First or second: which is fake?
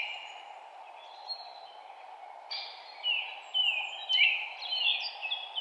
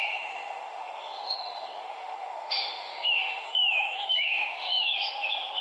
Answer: second